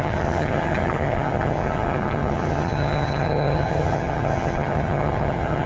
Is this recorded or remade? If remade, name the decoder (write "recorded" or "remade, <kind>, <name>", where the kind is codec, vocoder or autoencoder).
remade, vocoder, HiFi-GAN